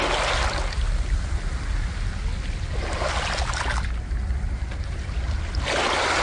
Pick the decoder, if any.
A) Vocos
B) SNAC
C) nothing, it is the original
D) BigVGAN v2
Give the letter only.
C